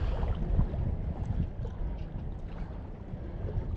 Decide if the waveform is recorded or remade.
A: recorded